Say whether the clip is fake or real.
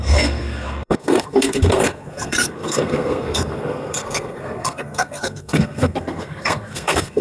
fake